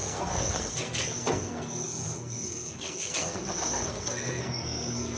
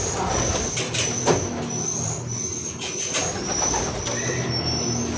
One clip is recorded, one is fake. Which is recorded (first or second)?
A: second